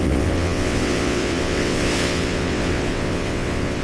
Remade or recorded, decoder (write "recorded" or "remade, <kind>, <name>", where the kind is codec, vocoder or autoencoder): remade, vocoder, WaveNeXt